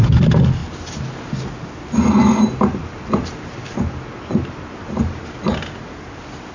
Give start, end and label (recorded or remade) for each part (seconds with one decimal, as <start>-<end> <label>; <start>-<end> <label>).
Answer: 0.0-6.5 recorded